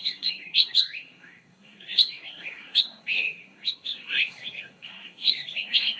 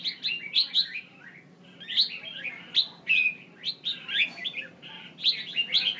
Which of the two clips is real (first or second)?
second